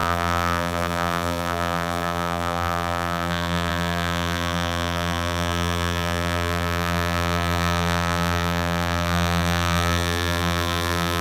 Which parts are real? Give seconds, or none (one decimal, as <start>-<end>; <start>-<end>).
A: none